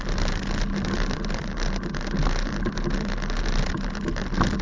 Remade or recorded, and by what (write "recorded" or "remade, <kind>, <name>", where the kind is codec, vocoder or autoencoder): recorded